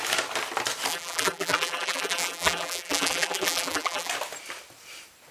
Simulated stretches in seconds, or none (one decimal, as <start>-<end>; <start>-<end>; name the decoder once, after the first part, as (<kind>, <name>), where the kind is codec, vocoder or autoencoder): 0.9-4.1 (vocoder, BigVGAN v2)